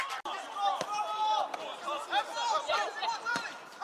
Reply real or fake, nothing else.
real